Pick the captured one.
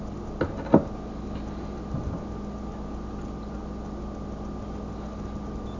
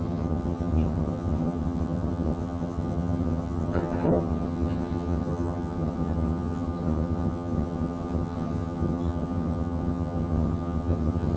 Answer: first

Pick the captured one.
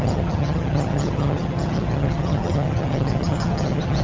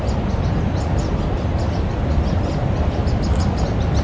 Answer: second